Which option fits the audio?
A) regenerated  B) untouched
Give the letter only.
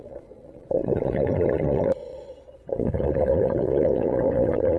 A